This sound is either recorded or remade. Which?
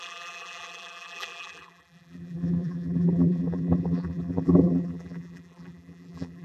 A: remade